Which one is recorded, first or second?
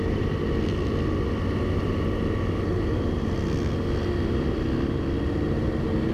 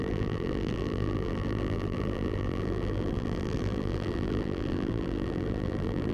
first